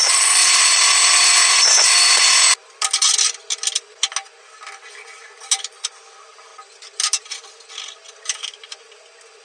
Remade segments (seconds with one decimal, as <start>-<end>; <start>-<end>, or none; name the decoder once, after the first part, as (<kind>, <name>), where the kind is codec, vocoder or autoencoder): none